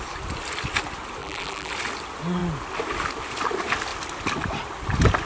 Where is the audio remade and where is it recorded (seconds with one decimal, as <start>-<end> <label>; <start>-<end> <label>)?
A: 0.0-1.2 recorded; 1.2-1.7 remade; 1.7-5.3 recorded